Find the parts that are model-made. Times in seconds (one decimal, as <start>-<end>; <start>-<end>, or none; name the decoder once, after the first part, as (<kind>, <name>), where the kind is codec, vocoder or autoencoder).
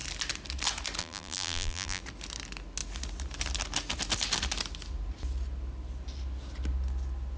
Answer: 1.0-2.0 (vocoder, BigVGAN v2)